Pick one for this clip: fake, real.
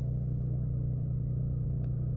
real